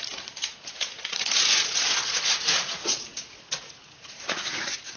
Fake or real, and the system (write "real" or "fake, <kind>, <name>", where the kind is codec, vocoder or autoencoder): fake, vocoder, Vocos